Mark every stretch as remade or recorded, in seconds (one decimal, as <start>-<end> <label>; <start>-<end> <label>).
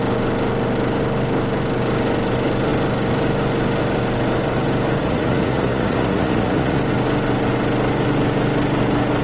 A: 0.0-5.0 recorded; 5.0-6.8 remade; 6.8-9.2 recorded